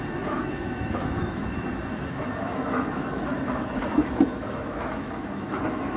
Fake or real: fake